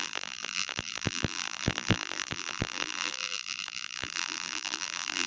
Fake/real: fake